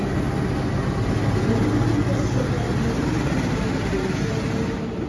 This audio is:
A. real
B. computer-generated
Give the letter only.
A